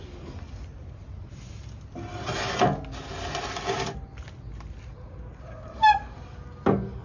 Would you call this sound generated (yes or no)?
no